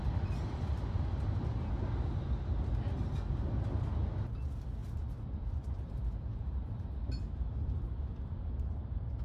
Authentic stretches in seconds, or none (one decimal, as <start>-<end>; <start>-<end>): 0.0-4.8; 7.8-9.2